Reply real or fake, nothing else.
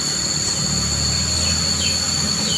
real